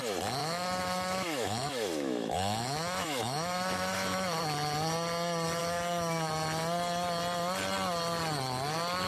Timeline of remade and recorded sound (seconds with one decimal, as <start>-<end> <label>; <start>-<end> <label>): 0.0-0.4 recorded; 0.4-4.4 remade; 4.4-5.6 recorded; 5.6-6.3 remade; 6.3-9.1 recorded